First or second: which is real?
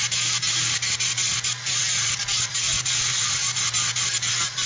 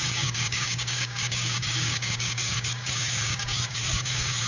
first